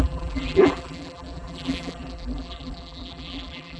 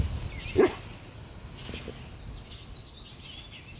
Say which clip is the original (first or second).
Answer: second